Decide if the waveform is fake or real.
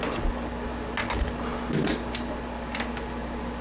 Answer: real